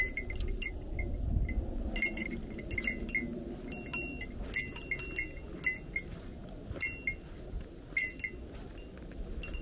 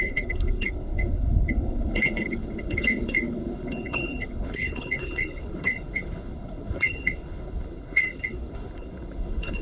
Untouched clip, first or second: first